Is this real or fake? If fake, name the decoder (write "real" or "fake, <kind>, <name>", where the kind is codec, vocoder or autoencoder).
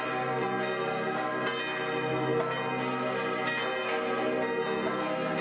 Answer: real